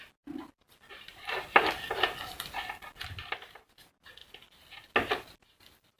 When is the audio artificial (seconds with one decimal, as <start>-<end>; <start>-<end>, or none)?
none